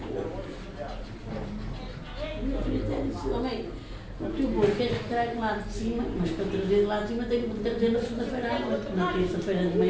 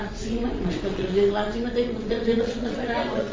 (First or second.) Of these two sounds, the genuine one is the first